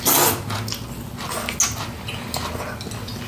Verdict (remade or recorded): recorded